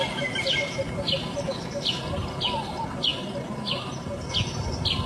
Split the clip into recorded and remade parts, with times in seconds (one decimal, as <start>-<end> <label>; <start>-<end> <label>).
0.0-5.1 recorded

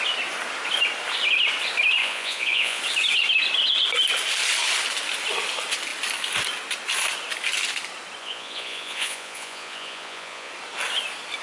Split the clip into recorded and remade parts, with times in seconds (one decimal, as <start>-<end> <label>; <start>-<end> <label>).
0.0-2.0 recorded; 2.0-2.8 remade; 2.8-8.2 recorded; 8.2-10.5 remade; 10.5-11.4 recorded

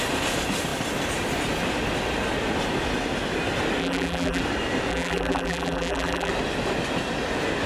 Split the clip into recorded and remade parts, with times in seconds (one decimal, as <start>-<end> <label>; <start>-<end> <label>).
0.0-3.8 recorded; 3.8-4.4 remade; 4.4-4.9 recorded; 4.9-6.3 remade; 6.3-7.7 recorded

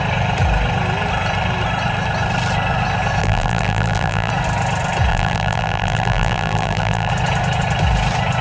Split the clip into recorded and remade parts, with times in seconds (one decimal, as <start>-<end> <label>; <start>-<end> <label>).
0.0-3.2 recorded; 3.2-4.3 remade; 4.3-5.1 recorded; 5.1-7.1 remade; 7.1-8.4 recorded

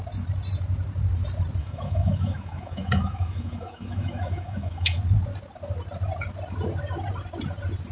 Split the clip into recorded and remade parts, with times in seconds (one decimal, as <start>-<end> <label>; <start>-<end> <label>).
0.0-1.6 recorded; 1.6-5.0 remade; 5.0-7.9 recorded

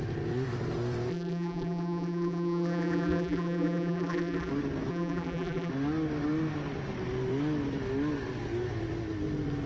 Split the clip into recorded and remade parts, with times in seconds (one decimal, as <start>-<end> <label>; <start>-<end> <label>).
0.0-1.1 recorded; 1.1-4.5 remade; 4.5-4.9 recorded; 4.9-5.7 remade; 5.7-9.7 recorded